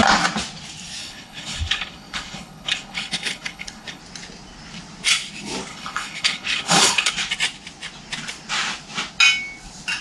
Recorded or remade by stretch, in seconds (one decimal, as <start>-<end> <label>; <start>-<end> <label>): 0.0-1.0 recorded; 1.0-4.0 remade; 4.0-5.7 recorded; 5.7-7.1 remade; 7.1-10.0 recorded